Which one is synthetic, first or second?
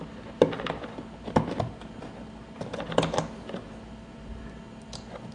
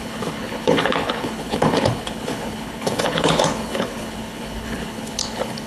second